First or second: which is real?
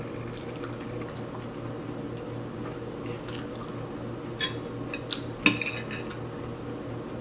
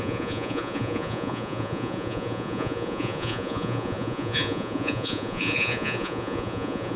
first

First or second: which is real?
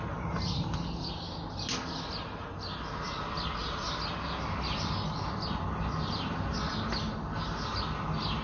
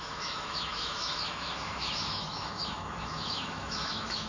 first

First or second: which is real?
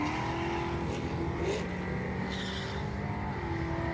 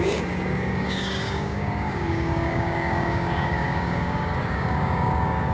first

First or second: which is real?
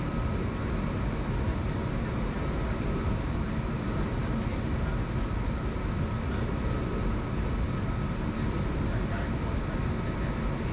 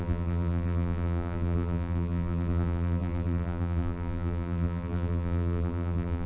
first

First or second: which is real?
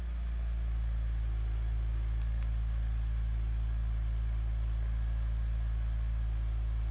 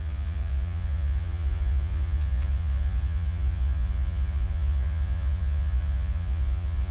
first